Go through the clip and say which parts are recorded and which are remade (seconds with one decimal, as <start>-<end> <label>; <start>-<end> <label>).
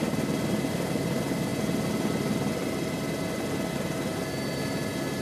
0.0-5.2 recorded